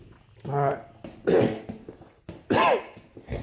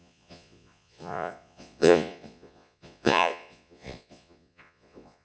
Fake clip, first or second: second